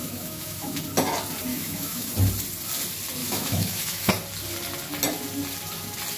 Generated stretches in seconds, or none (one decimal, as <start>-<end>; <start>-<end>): 0.0-0.8; 1.5-2.1; 3.2-4.1

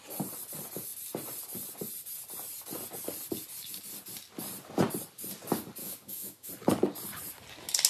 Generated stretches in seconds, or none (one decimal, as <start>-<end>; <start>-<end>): 5.8-6.5